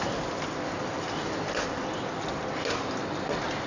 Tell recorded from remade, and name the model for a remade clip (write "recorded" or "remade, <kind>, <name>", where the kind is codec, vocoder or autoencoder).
recorded